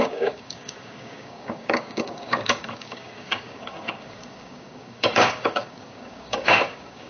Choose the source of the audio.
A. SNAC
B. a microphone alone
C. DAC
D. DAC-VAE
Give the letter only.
C